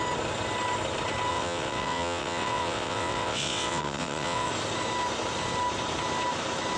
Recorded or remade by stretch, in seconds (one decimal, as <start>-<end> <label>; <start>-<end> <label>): 0.0-1.3 recorded; 1.3-4.5 remade; 4.5-6.8 recorded